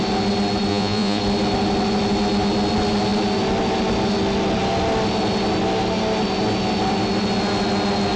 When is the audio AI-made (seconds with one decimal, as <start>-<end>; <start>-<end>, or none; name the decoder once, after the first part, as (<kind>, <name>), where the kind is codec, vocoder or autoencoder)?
0.7-1.2 (vocoder, Vocos)